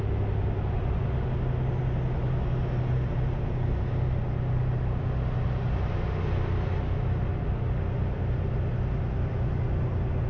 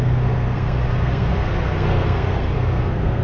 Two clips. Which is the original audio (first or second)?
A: first